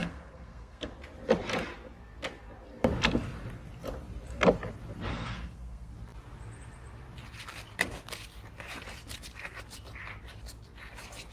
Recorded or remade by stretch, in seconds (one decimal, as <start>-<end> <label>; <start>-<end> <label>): 0.0-0.9 remade; 0.9-5.1 recorded; 5.1-5.9 remade; 5.9-11.3 recorded